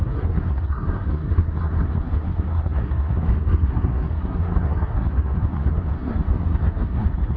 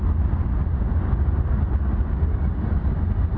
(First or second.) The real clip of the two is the second